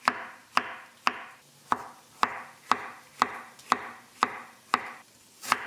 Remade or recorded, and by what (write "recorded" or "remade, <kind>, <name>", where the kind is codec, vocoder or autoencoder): recorded